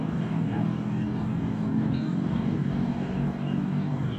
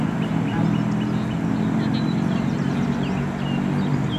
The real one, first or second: second